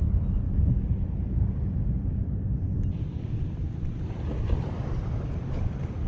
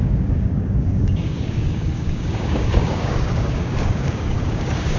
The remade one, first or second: second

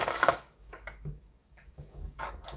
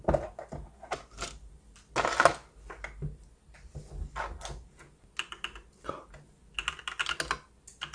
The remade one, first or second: first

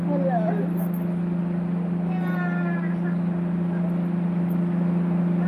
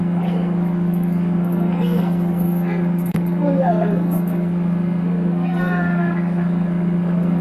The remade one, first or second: second